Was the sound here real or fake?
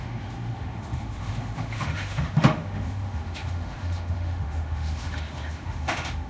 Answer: fake